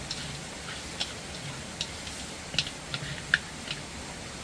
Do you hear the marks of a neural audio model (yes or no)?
no